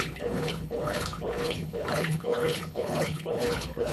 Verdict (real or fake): fake